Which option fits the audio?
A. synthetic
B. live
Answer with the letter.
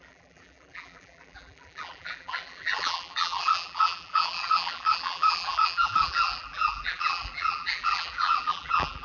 A